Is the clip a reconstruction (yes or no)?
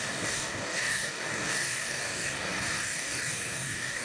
yes